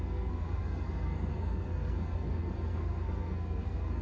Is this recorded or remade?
remade